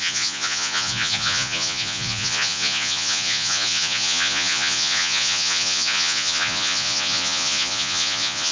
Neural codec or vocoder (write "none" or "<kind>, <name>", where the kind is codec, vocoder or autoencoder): vocoder, Vocos